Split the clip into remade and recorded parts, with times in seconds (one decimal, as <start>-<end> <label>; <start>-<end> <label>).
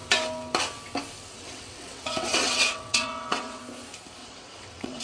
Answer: 0.0-1.3 recorded; 1.3-3.6 remade; 3.6-4.2 recorded; 4.2-5.0 remade